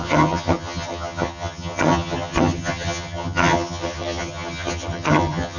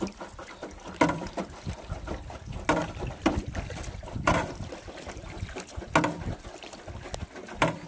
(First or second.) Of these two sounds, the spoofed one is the first